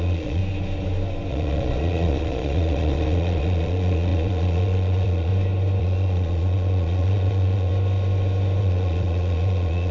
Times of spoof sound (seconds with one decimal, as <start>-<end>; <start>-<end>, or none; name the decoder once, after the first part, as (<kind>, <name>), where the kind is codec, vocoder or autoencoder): 0.0-0.4 (vocoder, Vocos); 1.3-5.3; 5.8-7.7; 8.6-9.9